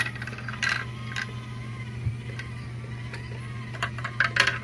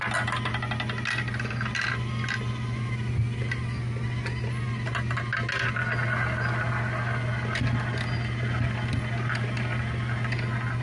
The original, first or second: second